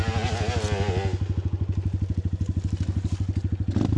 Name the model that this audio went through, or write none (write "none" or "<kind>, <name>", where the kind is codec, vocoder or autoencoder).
none